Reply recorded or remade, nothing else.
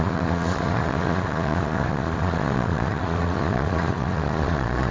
remade